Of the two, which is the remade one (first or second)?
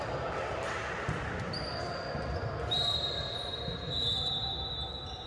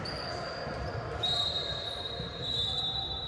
second